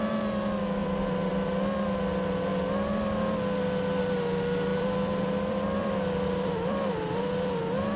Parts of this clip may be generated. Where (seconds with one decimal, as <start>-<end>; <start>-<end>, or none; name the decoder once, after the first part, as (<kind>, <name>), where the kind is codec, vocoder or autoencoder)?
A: 0.8-1.3 (vocoder, BigVGAN v2); 4.7-7.6